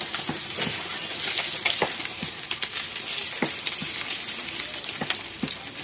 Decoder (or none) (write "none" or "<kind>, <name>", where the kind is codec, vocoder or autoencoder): none